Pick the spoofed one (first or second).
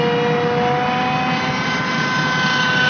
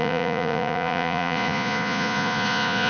second